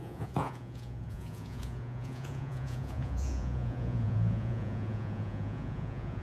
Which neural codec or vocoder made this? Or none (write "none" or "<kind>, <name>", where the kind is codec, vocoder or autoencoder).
vocoder, Vocos